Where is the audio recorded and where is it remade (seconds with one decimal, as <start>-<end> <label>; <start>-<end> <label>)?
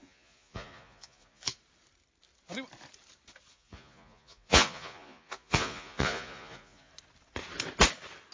0.0-1.6 remade; 1.6-3.5 recorded; 3.5-6.9 remade; 6.9-8.3 recorded